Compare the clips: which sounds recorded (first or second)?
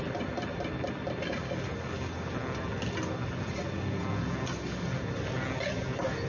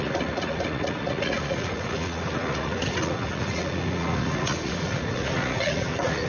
first